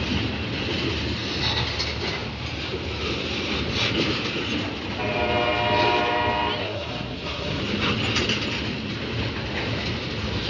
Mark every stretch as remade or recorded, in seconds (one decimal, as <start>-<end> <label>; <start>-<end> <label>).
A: 0.0-6.6 recorded; 6.6-7.6 remade; 7.6-10.5 recorded